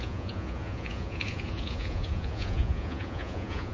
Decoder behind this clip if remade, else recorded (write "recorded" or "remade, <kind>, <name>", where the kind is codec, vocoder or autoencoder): remade, vocoder, Vocos